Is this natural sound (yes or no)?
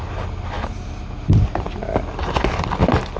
yes